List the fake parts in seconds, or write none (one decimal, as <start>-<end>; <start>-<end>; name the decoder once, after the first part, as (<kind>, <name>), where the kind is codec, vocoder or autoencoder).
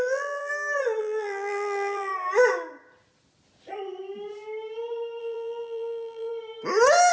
0.0-0.5 (vocoder, BigVGAN v2); 1.0-2.1; 5.2-6.3